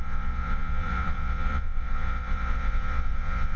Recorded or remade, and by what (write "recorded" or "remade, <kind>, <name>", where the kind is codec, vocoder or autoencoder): remade, vocoder, Vocos